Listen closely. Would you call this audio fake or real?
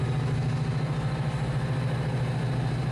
real